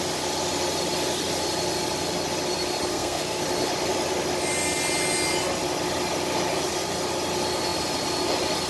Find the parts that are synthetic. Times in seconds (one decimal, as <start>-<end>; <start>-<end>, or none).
2.9-3.4